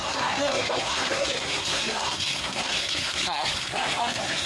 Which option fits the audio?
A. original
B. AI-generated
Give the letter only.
B